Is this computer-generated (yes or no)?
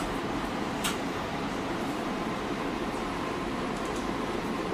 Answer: yes